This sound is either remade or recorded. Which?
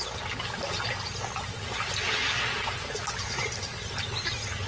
recorded